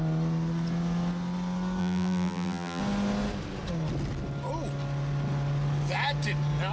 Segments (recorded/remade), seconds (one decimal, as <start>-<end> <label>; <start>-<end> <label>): 0.0-1.8 recorded; 1.8-2.8 remade; 2.8-6.7 recorded